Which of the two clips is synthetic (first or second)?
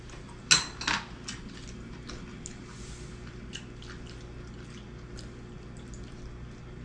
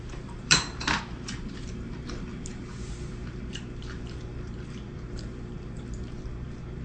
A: second